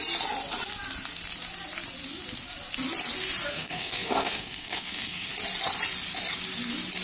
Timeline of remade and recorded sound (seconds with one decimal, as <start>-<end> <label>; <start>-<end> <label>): 0.0-3.5 recorded; 3.5-5.3 remade; 5.3-7.0 recorded